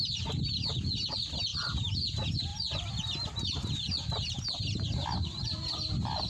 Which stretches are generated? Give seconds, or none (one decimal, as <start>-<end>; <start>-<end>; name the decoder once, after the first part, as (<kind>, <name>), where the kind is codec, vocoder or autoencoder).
none